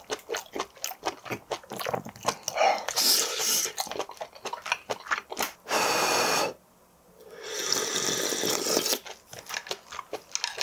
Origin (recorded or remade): recorded